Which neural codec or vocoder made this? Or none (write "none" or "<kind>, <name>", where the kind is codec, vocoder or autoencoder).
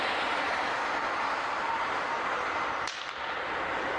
none